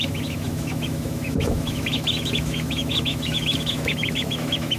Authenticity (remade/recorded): remade